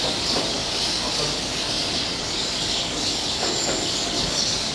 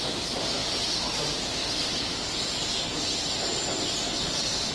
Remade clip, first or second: first